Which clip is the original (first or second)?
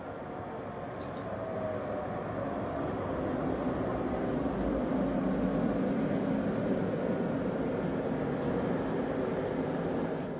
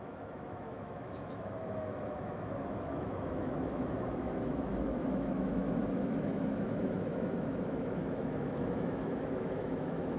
first